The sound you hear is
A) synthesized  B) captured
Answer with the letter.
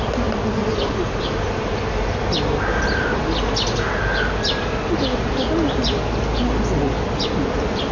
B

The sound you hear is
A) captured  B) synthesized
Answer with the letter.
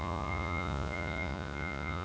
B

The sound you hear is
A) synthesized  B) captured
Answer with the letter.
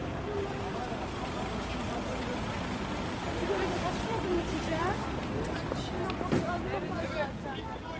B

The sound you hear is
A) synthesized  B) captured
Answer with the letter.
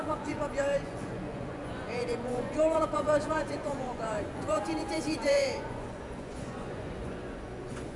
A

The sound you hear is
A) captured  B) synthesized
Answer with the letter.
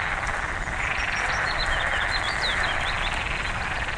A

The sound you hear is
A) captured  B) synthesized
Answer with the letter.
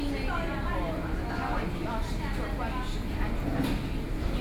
A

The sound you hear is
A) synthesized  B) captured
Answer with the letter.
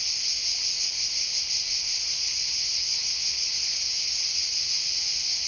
B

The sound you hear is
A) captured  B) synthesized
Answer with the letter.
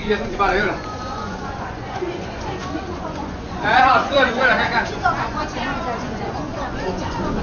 B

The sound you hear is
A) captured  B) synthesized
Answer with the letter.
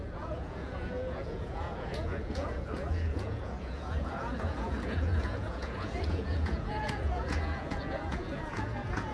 B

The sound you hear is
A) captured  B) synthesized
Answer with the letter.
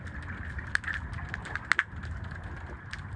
A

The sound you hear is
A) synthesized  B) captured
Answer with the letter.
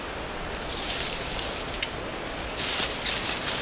B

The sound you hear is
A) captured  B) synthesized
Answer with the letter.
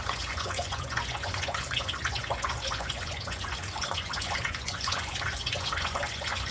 B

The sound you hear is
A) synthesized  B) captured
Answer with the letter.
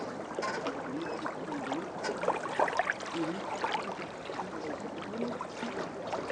B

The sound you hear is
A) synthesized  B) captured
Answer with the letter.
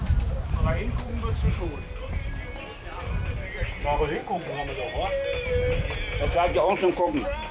B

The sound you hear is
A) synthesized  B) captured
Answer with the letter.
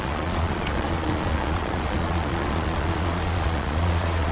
A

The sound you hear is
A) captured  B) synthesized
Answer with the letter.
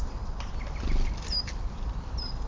A